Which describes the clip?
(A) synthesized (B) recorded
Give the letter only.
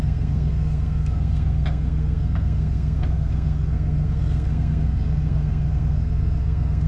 A